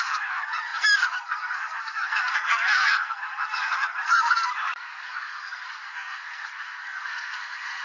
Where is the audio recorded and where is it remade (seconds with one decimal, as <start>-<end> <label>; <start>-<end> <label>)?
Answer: 0.0-7.8 remade